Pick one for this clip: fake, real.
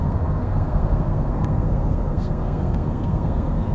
fake